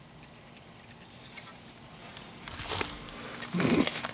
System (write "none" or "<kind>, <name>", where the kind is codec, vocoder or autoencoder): none